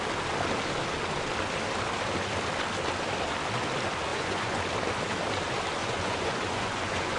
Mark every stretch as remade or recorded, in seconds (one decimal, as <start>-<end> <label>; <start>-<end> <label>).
0.0-4.1 recorded; 4.1-4.6 remade; 4.6-5.8 recorded; 5.8-7.2 remade